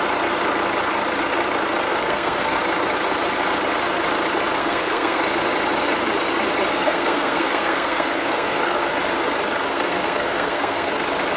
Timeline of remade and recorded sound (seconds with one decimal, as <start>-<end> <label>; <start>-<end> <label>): 0.0-1.9 recorded; 1.9-2.6 remade; 2.6-4.6 recorded; 4.6-5.2 remade; 5.2-6.7 recorded; 6.7-8.9 remade; 8.9-9.7 recorded; 9.7-10.9 remade; 10.9-11.4 recorded